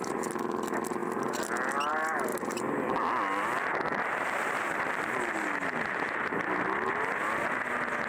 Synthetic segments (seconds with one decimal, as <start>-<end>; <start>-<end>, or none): 1.0-1.9; 2.3-5.2